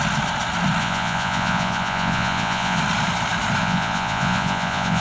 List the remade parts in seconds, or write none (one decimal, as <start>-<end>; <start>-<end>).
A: 0.8-2.8; 3.6-5.0